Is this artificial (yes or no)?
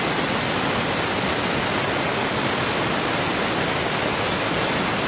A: no